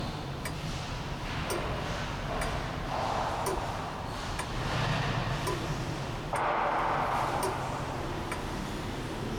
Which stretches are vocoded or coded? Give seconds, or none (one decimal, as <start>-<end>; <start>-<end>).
3.5-4.3